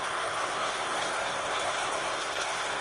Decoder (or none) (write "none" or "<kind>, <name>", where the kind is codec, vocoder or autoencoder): codec, SNAC